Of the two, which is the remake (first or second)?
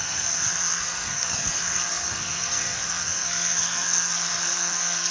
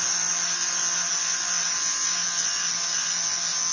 first